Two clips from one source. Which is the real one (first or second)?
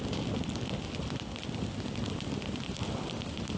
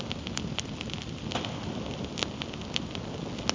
second